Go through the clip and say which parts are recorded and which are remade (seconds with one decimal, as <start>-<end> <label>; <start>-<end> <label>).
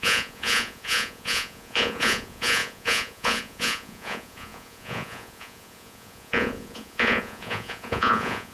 0.0-8.5 remade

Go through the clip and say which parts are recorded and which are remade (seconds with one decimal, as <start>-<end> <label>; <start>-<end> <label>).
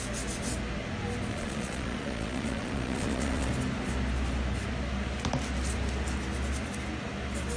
0.0-1.3 recorded; 1.3-3.5 remade; 3.5-7.6 recorded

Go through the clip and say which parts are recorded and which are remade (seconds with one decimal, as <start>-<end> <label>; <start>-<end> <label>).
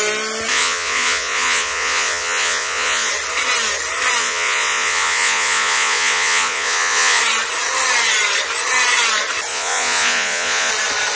0.0-0.5 recorded; 0.5-3.1 remade; 3.1-4.2 recorded; 4.2-7.2 remade; 7.2-9.5 recorded; 9.5-10.7 remade; 10.7-11.2 recorded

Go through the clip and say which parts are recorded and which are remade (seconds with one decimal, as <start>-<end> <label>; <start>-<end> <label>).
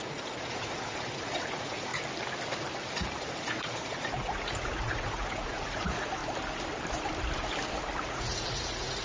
0.0-1.9 remade; 1.9-2.9 recorded; 2.9-6.2 remade; 6.2-8.0 recorded; 8.0-9.0 remade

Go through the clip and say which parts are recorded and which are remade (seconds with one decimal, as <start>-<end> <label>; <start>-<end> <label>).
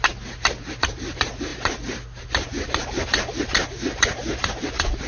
0.0-5.1 recorded